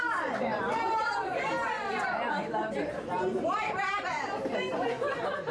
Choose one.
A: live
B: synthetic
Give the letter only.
B